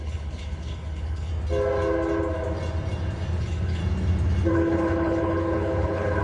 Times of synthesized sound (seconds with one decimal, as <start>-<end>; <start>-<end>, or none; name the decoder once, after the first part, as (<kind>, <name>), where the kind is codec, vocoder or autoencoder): 0.0-1.3 (codec, HILCodec); 3.4-3.8; 4.5-6.2